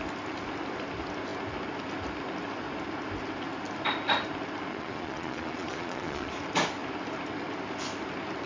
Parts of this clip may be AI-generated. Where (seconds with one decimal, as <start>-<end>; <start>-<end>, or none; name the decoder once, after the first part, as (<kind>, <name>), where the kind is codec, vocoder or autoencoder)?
4.7-6.3 (vocoder, Vocos)